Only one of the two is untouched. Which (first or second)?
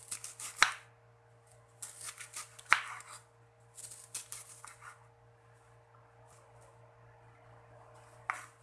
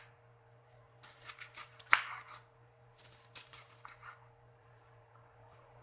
first